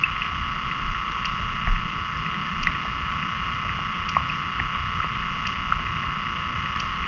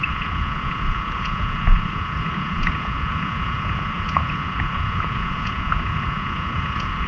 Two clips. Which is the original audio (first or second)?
first